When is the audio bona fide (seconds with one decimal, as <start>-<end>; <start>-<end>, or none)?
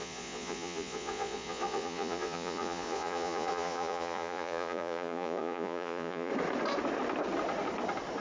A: 6.3-8.2